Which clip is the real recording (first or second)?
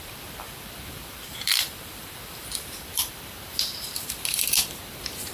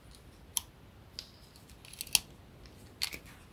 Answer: second